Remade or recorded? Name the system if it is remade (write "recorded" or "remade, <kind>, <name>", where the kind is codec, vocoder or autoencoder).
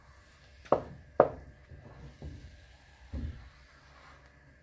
recorded